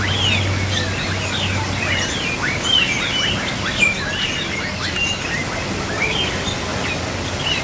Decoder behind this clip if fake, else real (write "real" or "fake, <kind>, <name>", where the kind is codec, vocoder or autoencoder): real